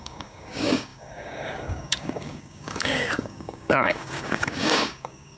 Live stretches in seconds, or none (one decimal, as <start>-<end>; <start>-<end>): none